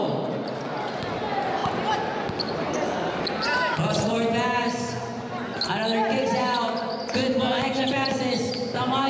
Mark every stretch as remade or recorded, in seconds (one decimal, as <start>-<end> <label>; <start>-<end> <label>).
0.0-9.1 recorded